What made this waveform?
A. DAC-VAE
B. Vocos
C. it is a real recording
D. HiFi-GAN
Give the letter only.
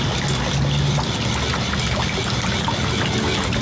C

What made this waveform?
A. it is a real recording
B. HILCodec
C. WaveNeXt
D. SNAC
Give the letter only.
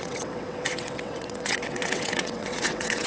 C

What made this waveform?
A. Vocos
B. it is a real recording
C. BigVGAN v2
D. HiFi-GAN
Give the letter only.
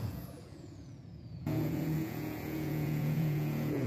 A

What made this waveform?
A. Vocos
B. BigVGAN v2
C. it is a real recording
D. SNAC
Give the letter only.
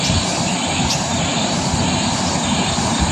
B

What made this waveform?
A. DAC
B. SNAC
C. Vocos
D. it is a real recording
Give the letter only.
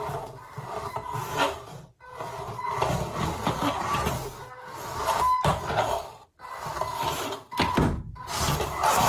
D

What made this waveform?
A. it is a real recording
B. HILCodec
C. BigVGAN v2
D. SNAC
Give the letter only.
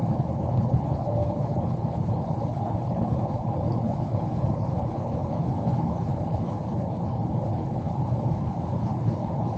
B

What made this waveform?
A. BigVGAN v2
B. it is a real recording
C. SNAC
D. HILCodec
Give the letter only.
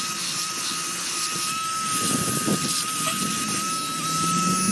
B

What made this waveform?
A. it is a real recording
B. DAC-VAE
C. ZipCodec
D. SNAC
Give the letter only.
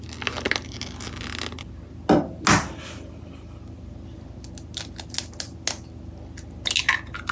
A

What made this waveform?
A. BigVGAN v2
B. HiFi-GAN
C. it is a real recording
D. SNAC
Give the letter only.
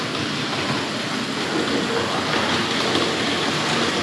C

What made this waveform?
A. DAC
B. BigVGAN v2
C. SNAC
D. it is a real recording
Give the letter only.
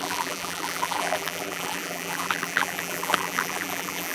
B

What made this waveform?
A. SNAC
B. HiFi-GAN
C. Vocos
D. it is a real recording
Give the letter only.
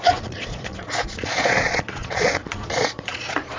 C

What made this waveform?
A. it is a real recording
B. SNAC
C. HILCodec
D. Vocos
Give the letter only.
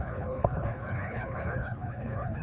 C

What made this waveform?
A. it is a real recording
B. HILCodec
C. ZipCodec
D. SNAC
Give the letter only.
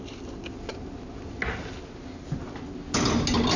A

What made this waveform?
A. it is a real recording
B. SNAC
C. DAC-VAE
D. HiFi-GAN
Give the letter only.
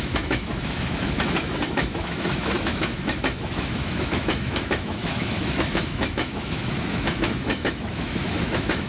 C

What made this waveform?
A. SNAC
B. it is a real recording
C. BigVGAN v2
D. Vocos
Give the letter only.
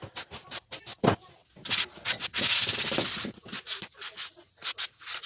B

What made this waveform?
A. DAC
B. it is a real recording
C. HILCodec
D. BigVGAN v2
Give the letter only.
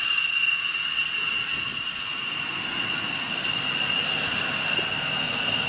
B